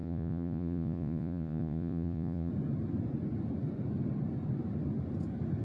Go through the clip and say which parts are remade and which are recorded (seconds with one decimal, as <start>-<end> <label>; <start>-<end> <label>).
0.0-2.5 remade; 2.5-5.6 recorded